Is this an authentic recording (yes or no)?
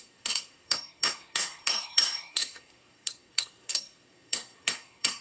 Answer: no